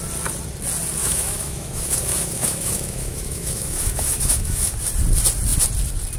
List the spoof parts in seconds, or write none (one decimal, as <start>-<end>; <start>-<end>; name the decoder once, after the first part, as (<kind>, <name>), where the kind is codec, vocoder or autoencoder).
1.0-4.7 (autoencoder, DAC-VAE)